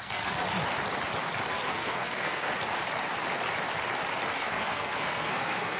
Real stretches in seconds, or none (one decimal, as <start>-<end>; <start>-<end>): 0.4-1.5; 2.5-4.4